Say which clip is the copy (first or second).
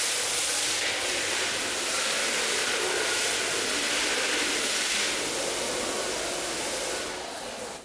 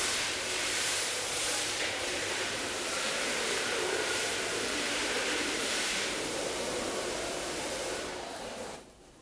second